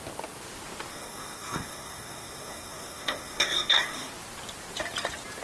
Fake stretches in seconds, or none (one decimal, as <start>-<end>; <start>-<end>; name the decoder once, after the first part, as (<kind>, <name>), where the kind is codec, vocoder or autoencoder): 0.9-4.1 (codec, SNAC)